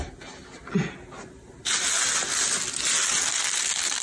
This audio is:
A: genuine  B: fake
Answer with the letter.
A